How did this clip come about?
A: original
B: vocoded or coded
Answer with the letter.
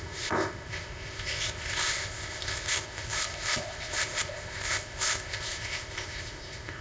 B